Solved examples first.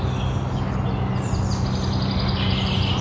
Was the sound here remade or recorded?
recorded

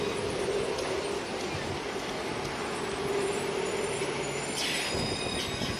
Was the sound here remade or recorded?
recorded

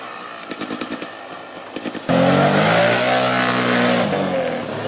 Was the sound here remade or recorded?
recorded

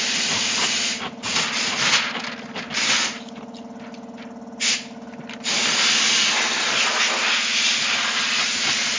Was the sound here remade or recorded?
recorded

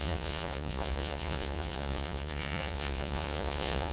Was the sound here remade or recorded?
remade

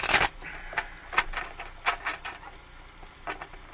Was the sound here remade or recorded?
recorded